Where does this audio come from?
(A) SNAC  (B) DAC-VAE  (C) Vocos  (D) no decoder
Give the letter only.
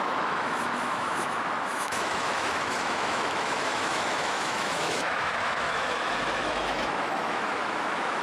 B